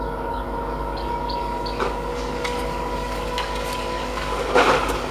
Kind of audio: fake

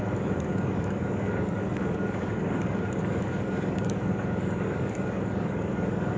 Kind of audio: fake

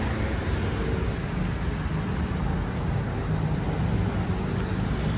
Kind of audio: real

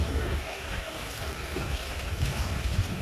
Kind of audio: fake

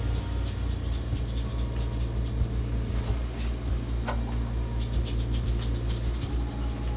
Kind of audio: real